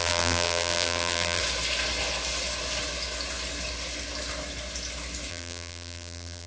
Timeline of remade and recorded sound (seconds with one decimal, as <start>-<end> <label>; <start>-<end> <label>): 0.0-1.4 remade; 1.4-5.3 recorded; 5.3-6.5 remade